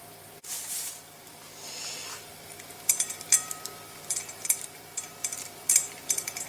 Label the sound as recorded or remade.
remade